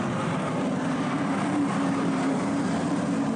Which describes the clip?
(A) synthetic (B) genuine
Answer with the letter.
A